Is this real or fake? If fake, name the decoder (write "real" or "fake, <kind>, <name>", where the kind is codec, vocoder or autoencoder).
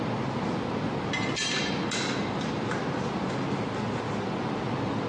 real